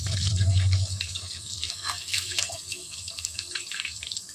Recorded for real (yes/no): no